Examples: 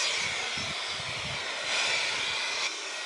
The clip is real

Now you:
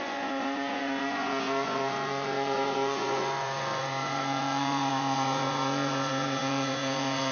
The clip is fake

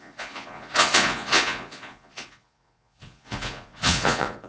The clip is fake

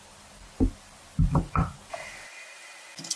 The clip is real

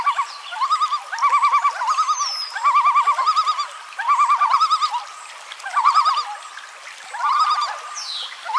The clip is real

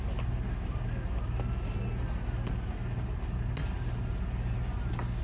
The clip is real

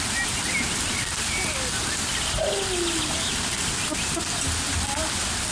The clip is real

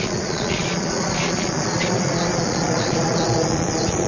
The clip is fake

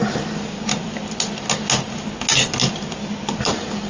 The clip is real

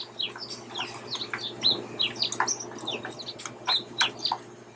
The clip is real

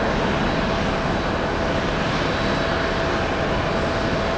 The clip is real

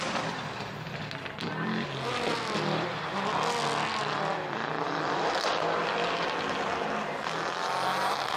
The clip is real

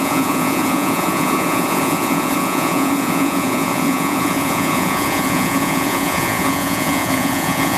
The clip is fake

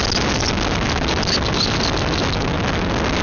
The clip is real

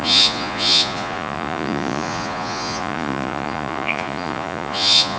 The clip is fake